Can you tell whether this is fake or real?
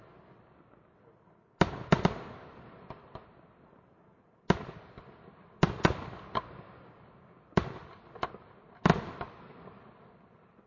real